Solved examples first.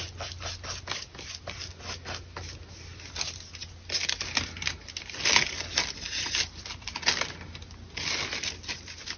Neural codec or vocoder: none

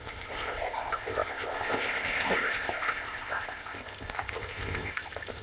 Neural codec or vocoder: codec, ZipCodec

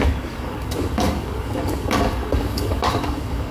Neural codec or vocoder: codec, DAC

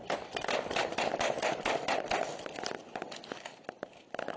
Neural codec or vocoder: none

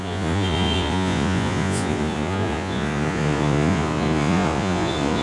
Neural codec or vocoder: vocoder, Vocos